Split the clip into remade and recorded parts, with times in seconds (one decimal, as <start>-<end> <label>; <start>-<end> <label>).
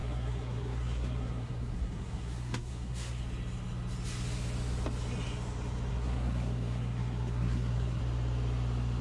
0.0-3.2 remade; 3.2-5.9 recorded; 5.9-8.0 remade; 8.0-9.0 recorded